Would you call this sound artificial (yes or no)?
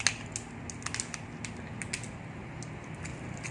no